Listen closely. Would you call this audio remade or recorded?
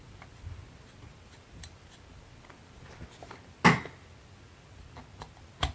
recorded